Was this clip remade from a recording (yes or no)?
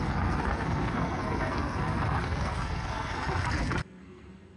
yes